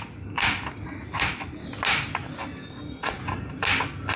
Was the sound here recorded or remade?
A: recorded